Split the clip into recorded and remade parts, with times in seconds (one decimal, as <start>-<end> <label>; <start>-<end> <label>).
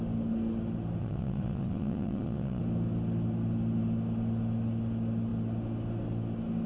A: 0.0-1.0 recorded; 1.0-2.6 remade; 2.6-6.7 recorded